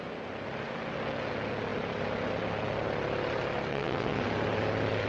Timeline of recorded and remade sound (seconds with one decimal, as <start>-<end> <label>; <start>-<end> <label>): 0.0-3.7 recorded; 3.7-4.2 remade; 4.2-5.1 recorded